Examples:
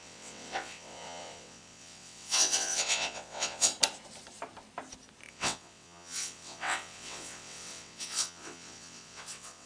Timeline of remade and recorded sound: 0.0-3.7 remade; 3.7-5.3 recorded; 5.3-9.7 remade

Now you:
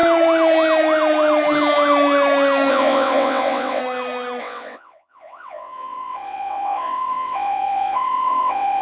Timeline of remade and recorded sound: 0.0-2.7 recorded; 2.7-3.8 remade; 3.8-4.4 recorded; 4.4-8.8 remade

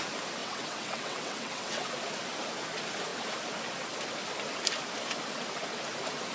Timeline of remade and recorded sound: 0.0-0.4 recorded; 0.4-1.9 remade; 1.9-6.3 recorded